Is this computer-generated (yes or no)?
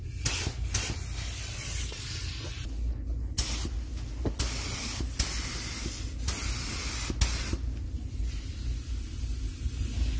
no